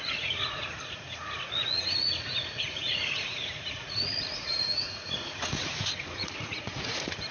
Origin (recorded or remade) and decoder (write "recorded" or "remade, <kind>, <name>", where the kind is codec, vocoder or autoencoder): remade, vocoder, Vocos